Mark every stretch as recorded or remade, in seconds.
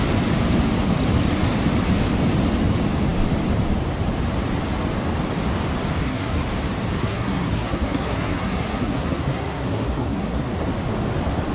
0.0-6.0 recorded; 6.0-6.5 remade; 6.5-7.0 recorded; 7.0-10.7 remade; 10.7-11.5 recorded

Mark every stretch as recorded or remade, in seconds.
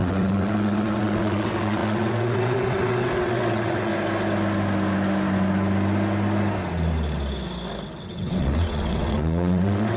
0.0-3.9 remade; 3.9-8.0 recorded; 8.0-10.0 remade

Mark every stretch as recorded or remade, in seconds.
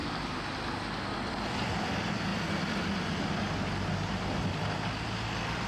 0.0-5.7 recorded